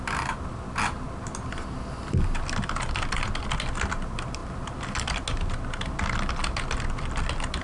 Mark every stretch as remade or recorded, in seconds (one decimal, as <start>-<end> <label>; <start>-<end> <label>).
0.0-7.6 recorded